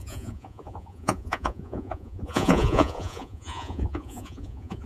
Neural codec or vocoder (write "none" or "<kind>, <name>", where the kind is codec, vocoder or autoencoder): vocoder, Vocos